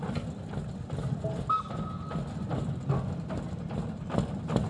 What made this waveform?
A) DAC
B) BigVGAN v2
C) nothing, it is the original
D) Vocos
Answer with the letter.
C